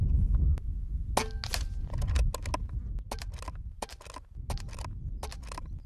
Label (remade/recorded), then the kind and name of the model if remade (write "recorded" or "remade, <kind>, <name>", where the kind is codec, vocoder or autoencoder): recorded